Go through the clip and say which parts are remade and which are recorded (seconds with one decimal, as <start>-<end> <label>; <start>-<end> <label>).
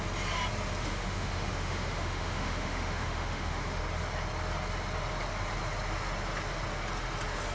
0.0-0.8 recorded; 0.8-3.8 remade; 3.8-7.5 recorded